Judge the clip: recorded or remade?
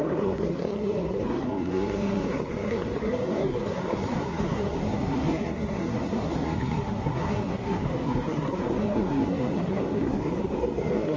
remade